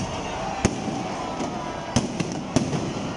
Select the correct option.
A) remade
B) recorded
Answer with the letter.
B